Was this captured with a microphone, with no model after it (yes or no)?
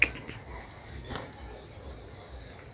yes